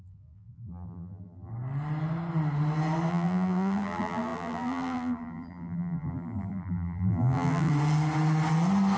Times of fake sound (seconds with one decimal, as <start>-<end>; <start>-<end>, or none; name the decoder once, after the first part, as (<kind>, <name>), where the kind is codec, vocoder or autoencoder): 0.0-1.5 (vocoder, BigVGAN v2); 3.1-7.7